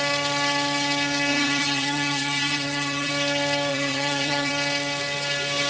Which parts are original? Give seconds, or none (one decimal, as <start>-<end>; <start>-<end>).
0.0-1.3; 3.1-3.7; 4.5-5.7